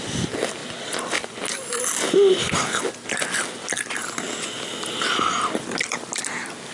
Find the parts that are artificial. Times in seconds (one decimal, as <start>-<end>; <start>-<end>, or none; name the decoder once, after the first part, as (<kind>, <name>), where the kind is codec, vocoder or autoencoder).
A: 2.3-2.8 (codec, HILCodec)